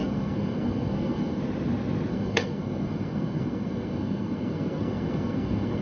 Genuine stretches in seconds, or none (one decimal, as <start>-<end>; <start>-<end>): 1.4-2.1